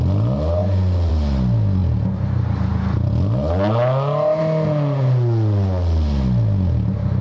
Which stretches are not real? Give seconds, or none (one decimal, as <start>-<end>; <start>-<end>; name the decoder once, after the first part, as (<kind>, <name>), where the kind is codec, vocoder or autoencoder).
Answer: none